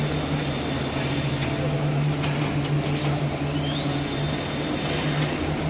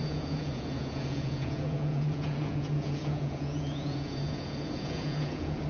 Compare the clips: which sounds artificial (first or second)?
second